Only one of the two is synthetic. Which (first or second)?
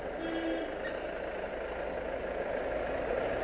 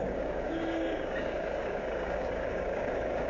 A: second